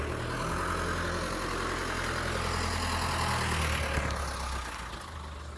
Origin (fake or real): real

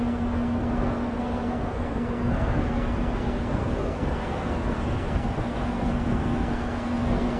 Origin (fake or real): fake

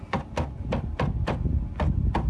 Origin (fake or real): real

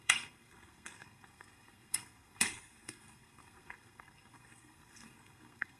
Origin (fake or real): fake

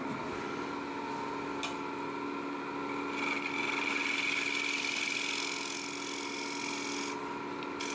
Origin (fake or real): real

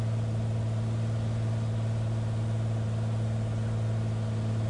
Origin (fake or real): real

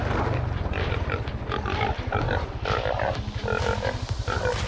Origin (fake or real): real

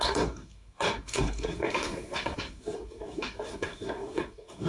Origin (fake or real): fake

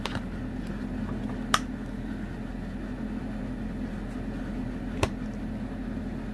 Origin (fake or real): real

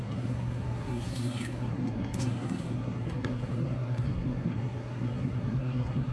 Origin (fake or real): fake